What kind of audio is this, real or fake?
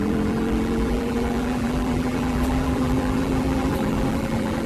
fake